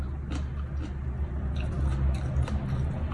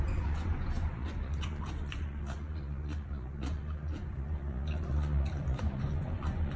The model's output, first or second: second